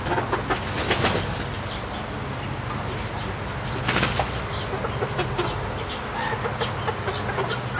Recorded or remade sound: recorded